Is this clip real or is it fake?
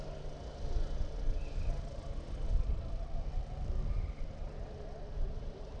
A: real